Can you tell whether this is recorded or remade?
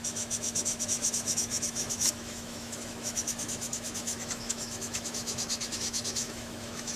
remade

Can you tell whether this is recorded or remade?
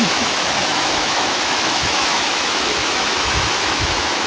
remade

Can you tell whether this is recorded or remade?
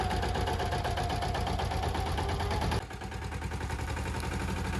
recorded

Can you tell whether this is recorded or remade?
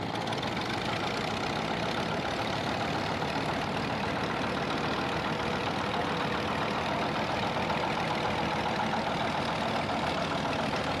recorded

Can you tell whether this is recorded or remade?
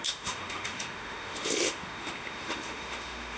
remade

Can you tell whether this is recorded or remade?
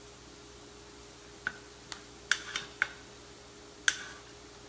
recorded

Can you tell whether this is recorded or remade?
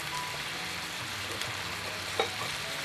recorded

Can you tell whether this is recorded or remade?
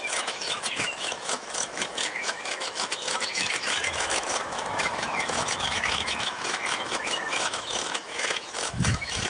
remade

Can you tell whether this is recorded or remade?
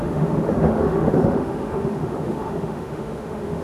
remade